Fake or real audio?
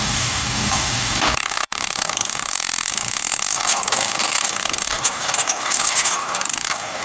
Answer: fake